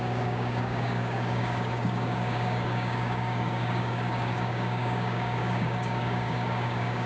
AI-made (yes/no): yes